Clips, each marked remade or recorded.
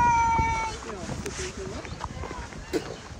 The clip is recorded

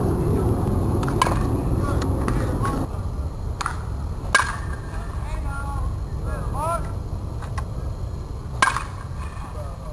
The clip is recorded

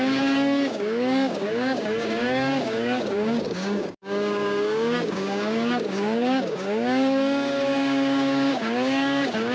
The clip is remade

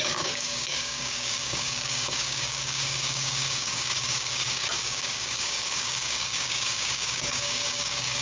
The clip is remade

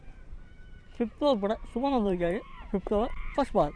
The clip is remade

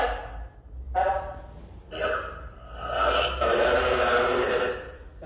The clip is recorded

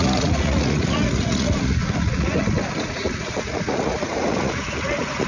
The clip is remade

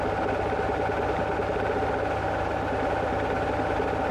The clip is recorded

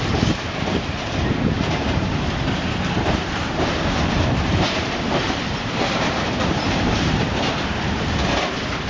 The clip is remade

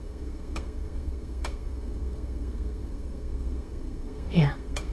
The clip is remade